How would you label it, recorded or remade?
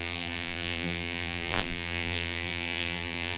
remade